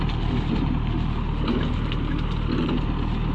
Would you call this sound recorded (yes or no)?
yes